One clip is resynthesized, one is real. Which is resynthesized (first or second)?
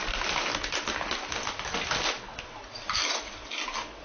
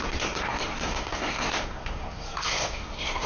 second